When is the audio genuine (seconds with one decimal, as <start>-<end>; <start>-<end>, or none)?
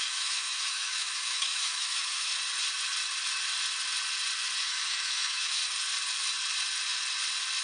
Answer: 2.3-4.6; 5.6-7.6